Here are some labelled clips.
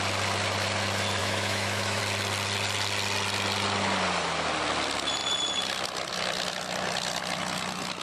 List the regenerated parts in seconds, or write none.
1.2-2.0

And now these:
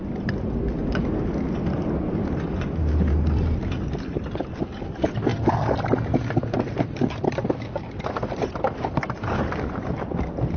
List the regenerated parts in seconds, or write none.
none

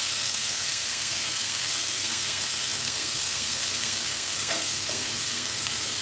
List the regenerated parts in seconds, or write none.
0.0-6.0